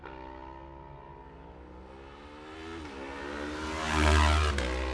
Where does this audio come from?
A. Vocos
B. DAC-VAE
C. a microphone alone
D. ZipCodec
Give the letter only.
C